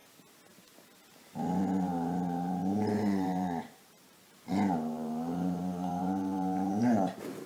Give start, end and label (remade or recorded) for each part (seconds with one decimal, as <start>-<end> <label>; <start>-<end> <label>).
0.0-1.6 recorded; 1.6-7.5 remade